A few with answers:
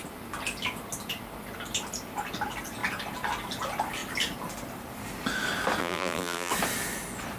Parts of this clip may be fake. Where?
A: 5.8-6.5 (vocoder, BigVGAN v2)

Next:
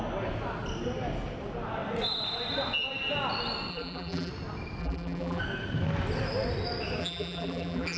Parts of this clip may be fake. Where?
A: 3.7-4.3 (vocoder, BigVGAN v2); 4.8-5.4; 7.0-8.0

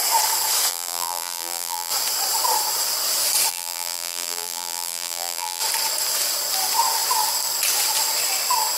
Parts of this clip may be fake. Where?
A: 0.7-1.9 (vocoder, BigVGAN v2); 3.5-5.6

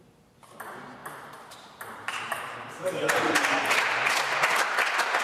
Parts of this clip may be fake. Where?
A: 1.0-4.1 (vocoder, BigVGAN v2)

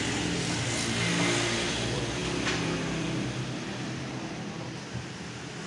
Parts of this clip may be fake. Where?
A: none